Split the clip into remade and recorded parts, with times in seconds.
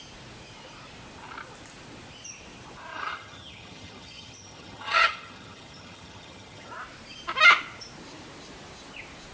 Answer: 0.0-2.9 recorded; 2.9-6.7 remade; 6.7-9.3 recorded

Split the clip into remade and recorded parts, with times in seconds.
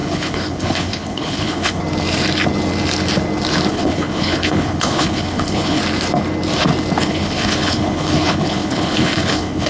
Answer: 0.0-1.8 remade; 1.8-3.7 recorded; 3.7-5.8 remade; 5.8-7.0 recorded; 7.0-9.7 remade